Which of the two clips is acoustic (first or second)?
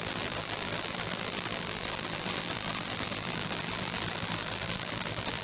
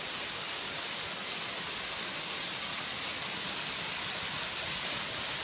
second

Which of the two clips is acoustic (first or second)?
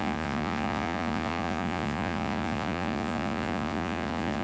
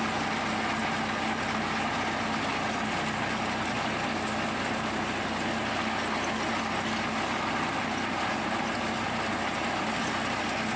second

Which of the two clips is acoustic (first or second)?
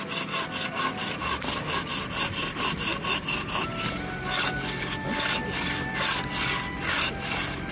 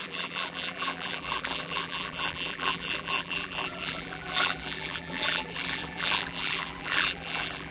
first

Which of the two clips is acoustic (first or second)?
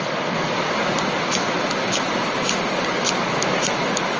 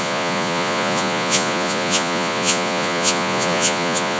first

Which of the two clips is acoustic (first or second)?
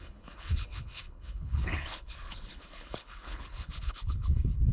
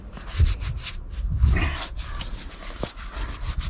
second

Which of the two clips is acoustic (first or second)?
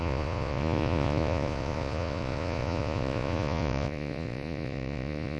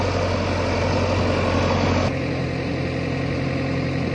second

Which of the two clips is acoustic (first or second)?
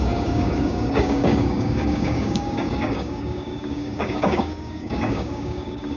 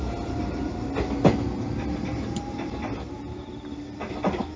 second